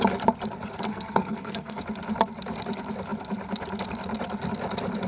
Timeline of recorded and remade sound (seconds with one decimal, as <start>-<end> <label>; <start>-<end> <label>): 0.0-0.9 recorded; 0.9-1.8 remade; 1.8-5.1 recorded